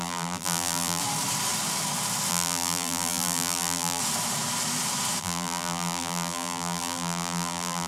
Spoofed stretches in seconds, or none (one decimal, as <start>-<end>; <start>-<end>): 0.0-1.0; 2.3-4.0; 5.2-7.9

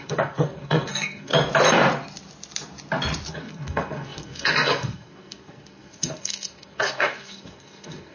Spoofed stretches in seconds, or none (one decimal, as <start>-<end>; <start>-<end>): 0.0-1.3; 3.3-8.1